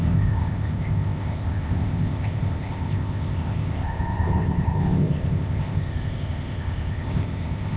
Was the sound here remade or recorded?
remade